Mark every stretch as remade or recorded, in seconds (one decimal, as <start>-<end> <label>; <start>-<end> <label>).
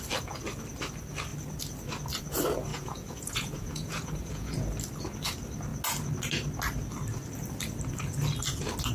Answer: 0.0-2.7 recorded; 2.7-4.6 remade; 4.6-8.9 recorded